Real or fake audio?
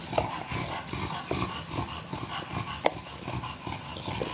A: real